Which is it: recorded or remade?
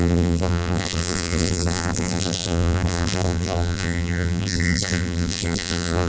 remade